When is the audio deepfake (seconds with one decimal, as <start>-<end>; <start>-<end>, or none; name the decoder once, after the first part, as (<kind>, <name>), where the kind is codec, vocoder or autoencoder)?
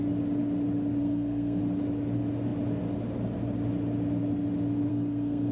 1.0-1.6 (codec, SNAC); 4.9-5.5